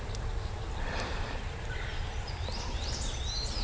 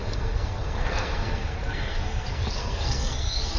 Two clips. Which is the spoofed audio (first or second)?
second